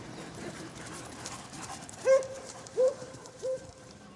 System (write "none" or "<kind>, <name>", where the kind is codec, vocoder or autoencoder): vocoder, BigVGAN v2